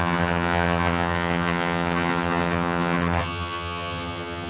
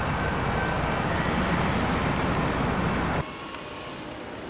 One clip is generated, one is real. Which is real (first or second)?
second